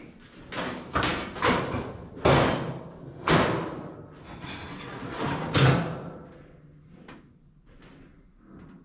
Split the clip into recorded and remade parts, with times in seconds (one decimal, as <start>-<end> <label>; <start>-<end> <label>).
0.0-5.0 recorded; 5.0-6.3 remade; 6.3-8.8 recorded